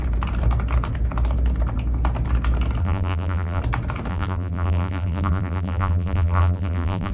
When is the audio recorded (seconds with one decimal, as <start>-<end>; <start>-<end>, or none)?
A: 0.0-2.8; 3.6-4.1